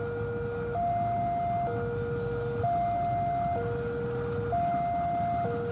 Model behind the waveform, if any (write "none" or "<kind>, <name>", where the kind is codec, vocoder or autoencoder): none